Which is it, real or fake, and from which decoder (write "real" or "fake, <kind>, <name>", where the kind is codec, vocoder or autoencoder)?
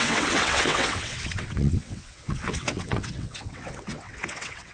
fake, vocoder, WaveNeXt